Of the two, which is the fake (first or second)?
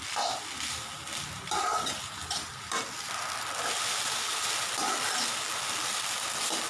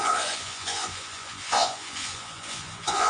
second